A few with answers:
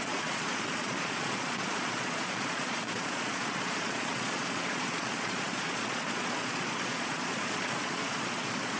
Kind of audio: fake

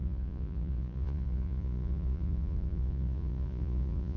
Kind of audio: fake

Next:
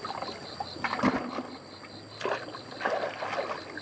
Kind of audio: real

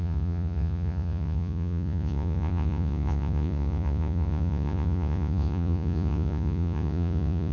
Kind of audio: fake